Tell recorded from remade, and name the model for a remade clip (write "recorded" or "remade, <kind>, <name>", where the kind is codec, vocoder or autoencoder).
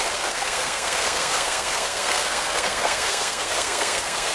remade, codec, SNAC